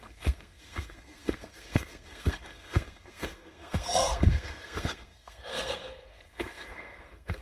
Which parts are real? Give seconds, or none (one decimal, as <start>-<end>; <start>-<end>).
none